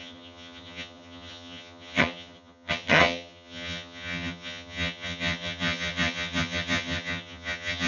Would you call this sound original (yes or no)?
no